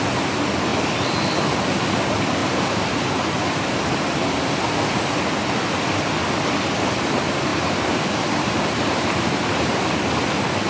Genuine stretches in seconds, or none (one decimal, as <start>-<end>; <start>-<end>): 0.0-2.4; 4.5-7.5; 9.8-10.7